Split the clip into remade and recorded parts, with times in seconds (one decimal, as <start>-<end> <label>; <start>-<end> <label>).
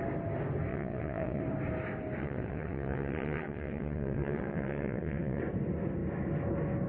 0.0-0.7 recorded; 0.7-1.4 remade; 1.4-2.2 recorded; 2.2-5.4 remade; 5.4-6.9 recorded